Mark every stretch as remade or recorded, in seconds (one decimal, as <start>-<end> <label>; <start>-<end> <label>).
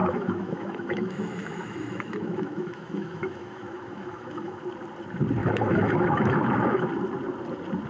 0.0-4.6 remade; 4.6-5.4 recorded; 5.4-6.9 remade; 6.9-7.9 recorded